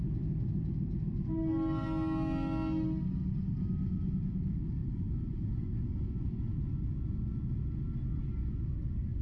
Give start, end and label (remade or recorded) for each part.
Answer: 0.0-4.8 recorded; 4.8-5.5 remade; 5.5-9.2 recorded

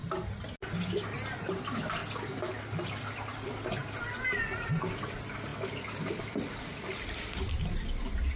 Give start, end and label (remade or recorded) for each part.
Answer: 0.0-1.3 recorded; 1.3-2.0 remade; 2.0-4.3 recorded; 4.3-8.4 remade

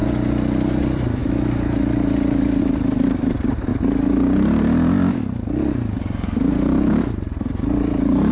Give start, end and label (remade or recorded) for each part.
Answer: 0.0-0.7 recorded; 0.7-1.2 remade; 1.2-2.6 recorded; 2.6-3.7 remade; 3.7-6.5 recorded; 6.5-8.3 remade

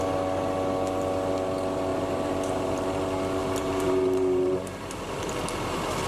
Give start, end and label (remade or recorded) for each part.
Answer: 0.0-1.9 recorded; 1.9-3.0 remade; 3.0-3.4 recorded; 3.4-5.2 remade; 5.2-6.1 recorded

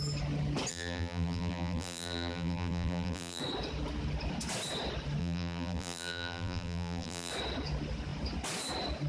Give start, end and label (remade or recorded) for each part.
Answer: 0.0-0.7 recorded; 0.7-3.4 remade; 3.4-5.2 recorded; 5.2-7.3 remade; 7.3-9.1 recorded

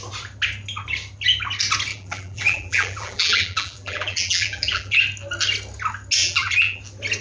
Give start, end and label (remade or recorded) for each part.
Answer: 0.0-1.9 recorded; 1.9-5.0 remade; 5.0-6.2 recorded; 6.2-6.8 remade; 6.8-7.2 recorded

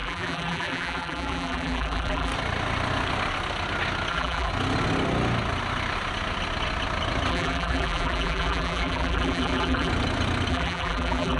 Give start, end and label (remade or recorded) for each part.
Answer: 0.0-2.3 remade; 2.3-4.1 recorded; 4.1-4.5 remade; 4.5-7.3 recorded; 7.3-9.9 remade; 9.9-10.5 recorded; 10.5-11.4 remade